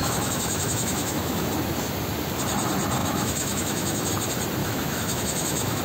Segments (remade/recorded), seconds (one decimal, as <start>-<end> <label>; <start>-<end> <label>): 0.0-1.5 remade; 1.5-3.0 recorded; 3.0-4.1 remade; 4.1-4.6 recorded; 4.6-5.8 remade